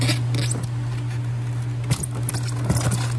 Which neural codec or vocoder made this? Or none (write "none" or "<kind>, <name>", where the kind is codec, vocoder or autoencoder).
none